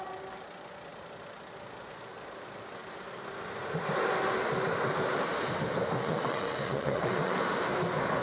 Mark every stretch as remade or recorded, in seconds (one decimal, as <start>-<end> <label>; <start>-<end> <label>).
0.0-6.0 recorded; 6.0-7.4 remade; 7.4-8.2 recorded